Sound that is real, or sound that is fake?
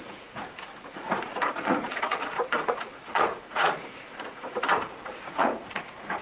fake